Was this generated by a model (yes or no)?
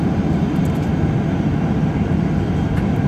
no